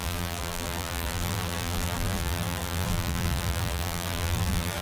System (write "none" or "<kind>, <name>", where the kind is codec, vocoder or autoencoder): vocoder, BigVGAN v2